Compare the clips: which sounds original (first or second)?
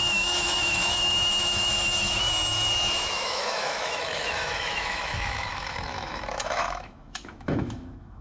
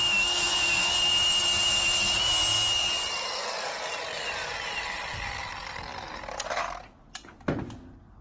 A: second